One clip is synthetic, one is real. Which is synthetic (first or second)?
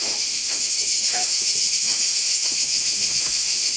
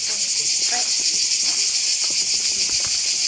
first